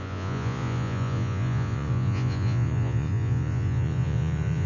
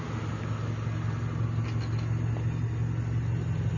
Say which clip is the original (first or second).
second